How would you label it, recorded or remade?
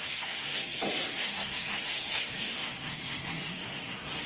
remade